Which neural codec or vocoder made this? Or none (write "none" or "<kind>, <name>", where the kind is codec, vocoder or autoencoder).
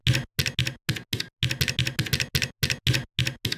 none